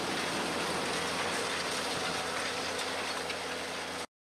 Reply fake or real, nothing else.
real